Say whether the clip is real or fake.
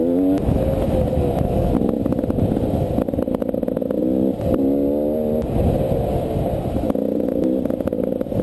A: real